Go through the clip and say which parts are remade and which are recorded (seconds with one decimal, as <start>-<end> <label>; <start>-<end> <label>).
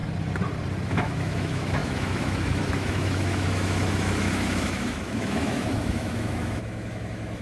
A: 0.0-0.9 recorded; 0.9-7.4 remade